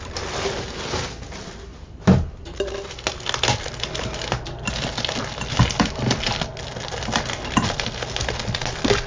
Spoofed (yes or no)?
no